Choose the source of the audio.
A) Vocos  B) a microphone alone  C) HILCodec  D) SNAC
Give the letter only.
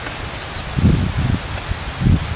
B